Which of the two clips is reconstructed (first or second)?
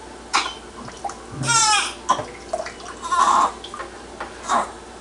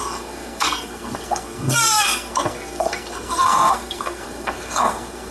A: second